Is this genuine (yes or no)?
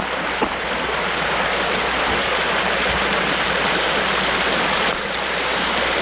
yes